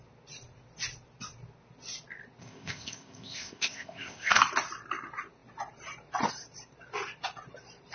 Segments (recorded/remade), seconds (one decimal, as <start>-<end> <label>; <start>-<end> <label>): 0.0-2.4 recorded; 2.4-4.4 remade; 4.4-7.9 recorded